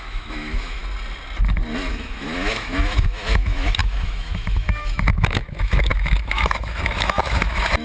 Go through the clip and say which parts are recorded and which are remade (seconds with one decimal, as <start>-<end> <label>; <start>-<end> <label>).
0.0-0.8 remade; 0.8-1.9 recorded; 1.9-7.8 remade